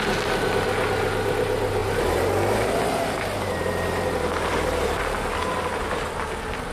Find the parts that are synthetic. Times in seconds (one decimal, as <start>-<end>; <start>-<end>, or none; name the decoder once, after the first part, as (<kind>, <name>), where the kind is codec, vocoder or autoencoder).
1.8-5.6 (vocoder, BigVGAN v2)